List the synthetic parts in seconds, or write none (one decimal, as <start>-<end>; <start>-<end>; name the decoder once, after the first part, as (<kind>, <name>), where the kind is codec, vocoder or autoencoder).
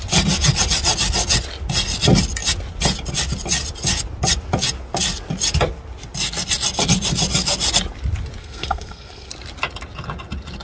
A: 8.4-9.3 (codec, SNAC)